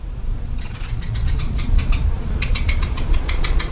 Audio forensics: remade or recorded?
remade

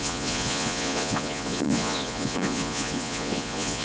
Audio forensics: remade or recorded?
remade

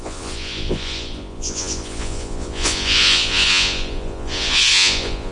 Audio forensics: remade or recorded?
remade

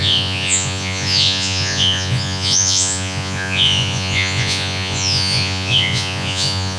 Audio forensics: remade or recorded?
remade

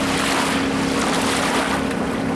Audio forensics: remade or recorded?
recorded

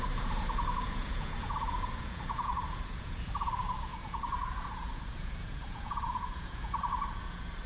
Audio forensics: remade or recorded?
remade